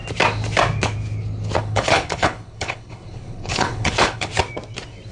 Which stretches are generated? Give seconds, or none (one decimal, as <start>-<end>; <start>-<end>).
1.6-4.3